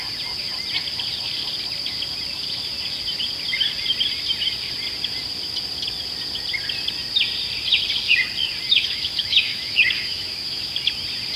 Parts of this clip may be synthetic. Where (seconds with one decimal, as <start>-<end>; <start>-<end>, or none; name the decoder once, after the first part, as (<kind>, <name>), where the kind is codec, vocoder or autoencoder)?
8.7-10.6 (autoencoder, DAC-VAE)